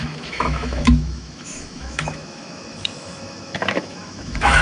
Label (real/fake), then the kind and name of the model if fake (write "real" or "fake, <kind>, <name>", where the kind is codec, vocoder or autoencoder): fake, autoencoder, DAC-VAE